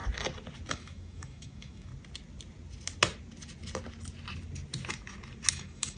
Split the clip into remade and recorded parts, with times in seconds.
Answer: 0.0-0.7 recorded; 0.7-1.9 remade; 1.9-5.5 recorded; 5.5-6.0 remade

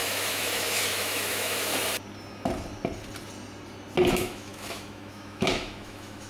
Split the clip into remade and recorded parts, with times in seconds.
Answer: 0.0-1.7 remade; 1.7-4.1 recorded; 4.1-6.3 remade

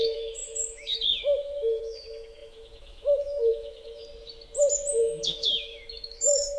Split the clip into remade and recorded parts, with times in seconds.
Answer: 0.0-4.0 remade; 4.0-5.0 recorded; 5.0-6.6 remade

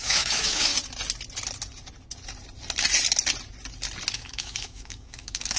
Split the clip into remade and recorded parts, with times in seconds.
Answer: 0.0-0.7 remade; 0.7-4.1 recorded; 4.1-5.6 remade

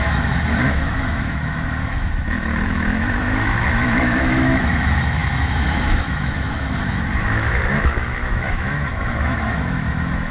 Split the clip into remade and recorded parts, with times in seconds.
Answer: 0.0-10.3 remade

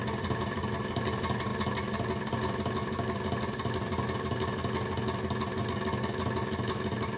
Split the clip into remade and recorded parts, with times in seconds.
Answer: 0.0-7.2 recorded

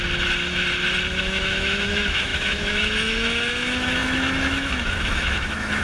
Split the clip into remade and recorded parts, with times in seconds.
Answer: 0.0-1.2 recorded; 1.2-5.8 remade